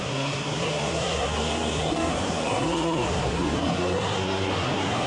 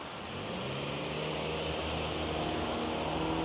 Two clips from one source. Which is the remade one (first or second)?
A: first